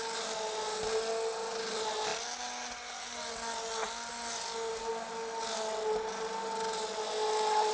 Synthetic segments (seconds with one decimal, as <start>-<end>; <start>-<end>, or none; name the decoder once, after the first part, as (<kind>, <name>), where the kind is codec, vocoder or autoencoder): none

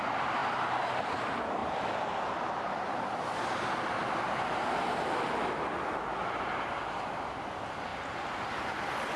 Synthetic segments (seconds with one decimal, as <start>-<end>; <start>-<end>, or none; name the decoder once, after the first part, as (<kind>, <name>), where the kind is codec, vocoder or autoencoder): none

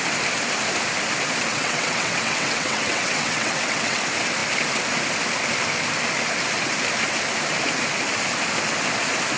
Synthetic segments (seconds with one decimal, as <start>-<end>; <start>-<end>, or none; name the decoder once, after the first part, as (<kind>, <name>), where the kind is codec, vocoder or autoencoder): 1.5-4.0 (vocoder, WaveNeXt)

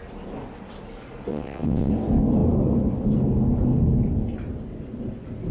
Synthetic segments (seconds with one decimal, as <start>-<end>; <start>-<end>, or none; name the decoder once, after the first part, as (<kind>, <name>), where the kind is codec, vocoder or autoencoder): 1.3-1.9 (vocoder, WaveNeXt)

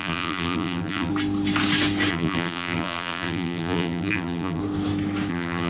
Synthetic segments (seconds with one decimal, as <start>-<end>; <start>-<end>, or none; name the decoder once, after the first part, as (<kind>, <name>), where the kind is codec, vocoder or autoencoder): 0.0-1.1 (vocoder, BigVGAN v2); 2.1-4.6; 5.3-5.7